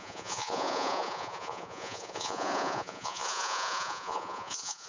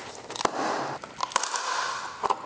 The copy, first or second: first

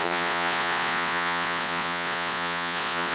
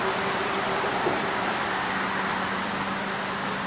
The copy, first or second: first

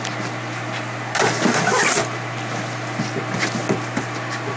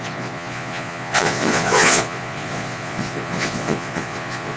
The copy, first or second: second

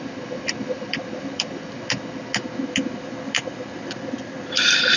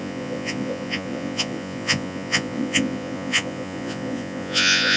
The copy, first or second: second